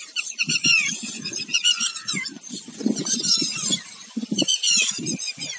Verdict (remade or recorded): remade